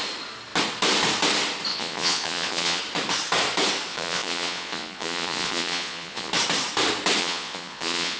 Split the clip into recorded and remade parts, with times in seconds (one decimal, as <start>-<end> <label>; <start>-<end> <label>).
0.0-1.7 recorded; 1.7-2.8 remade; 2.8-3.9 recorded; 3.9-6.3 remade; 6.3-7.2 recorded; 7.2-8.2 remade